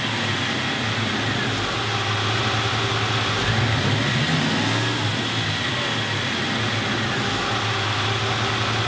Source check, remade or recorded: recorded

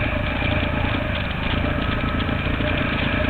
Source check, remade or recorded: recorded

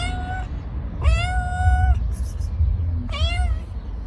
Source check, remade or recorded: recorded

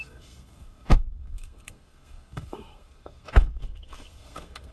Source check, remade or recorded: remade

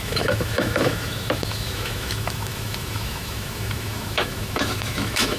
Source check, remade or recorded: remade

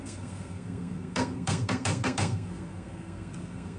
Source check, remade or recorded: remade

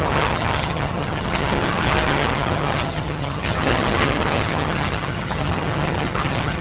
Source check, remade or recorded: remade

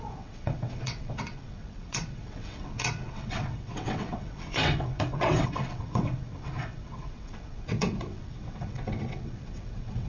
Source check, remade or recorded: remade